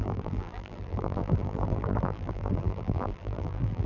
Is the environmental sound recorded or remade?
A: remade